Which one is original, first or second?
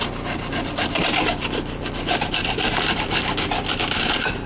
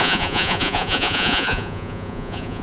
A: first